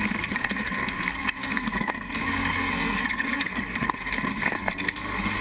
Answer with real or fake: fake